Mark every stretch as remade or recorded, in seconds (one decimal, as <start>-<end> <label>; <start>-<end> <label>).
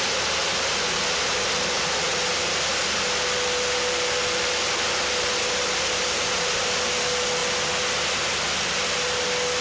0.0-9.6 recorded